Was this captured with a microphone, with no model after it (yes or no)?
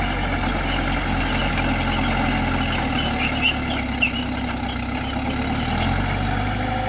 yes